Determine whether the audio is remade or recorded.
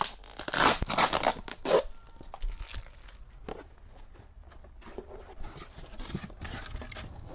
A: recorded